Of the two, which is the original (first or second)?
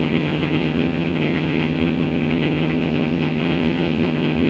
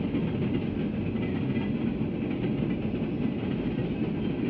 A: second